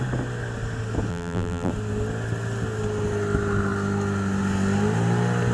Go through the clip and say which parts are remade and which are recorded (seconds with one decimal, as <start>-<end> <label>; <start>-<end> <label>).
0.0-1.1 recorded; 1.1-1.7 remade; 1.7-5.5 recorded